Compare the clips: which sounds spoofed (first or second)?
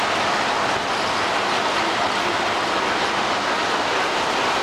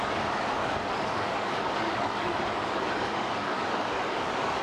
second